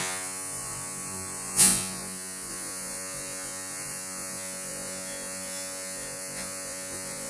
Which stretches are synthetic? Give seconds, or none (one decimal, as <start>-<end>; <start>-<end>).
0.0-7.3